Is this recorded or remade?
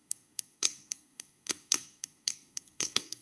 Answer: remade